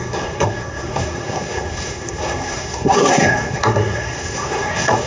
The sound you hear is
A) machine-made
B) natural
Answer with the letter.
A